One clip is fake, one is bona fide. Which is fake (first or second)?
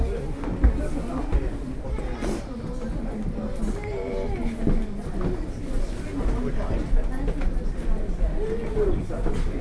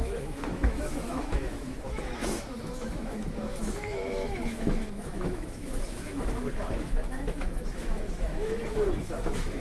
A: second